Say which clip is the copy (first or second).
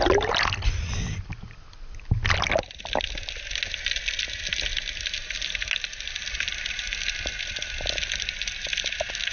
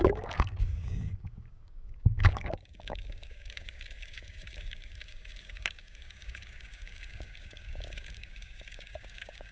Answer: second